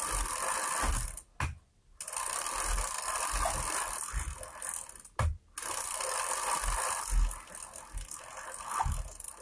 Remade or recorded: recorded